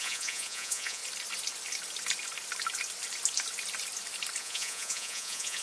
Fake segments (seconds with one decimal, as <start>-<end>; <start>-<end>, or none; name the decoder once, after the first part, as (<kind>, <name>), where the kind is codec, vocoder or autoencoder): 0.0-1.0 (vocoder, Vocos); 4.4-5.6